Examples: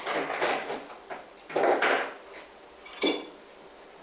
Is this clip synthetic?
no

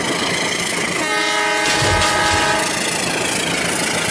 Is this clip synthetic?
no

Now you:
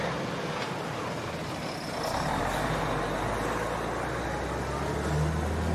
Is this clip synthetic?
no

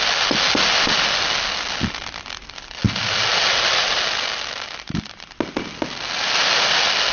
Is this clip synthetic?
no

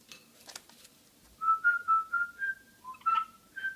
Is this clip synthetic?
no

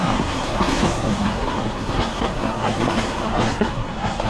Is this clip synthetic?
yes